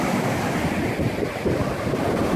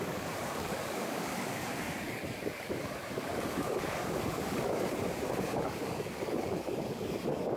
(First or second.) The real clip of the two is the first